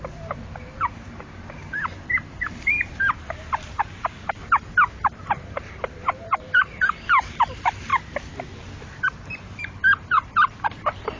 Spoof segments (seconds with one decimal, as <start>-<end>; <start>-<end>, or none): 0.0-4.4; 4.9-7.9; 8.8-11.2